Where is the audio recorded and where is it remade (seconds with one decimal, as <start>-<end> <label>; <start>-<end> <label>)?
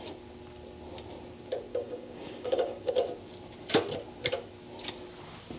0.0-1.7 recorded; 1.7-2.9 remade; 2.9-5.6 recorded